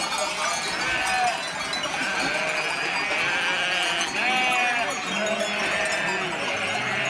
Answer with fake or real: real